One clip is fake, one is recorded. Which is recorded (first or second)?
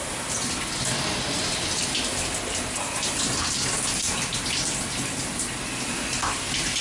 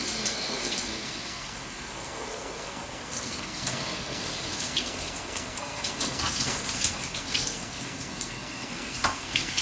first